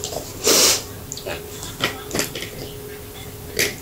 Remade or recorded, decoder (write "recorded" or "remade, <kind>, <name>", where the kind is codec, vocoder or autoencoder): recorded